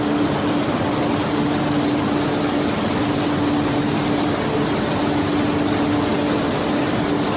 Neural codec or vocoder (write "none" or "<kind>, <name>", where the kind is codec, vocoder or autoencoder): none